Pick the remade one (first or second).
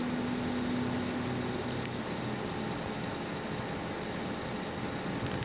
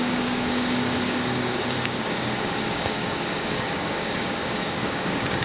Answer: second